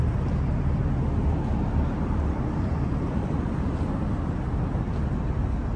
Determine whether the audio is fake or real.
real